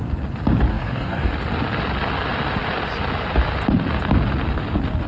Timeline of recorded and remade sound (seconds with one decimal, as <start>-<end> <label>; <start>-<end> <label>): 0.0-0.7 recorded; 0.7-1.3 remade; 1.3-5.1 recorded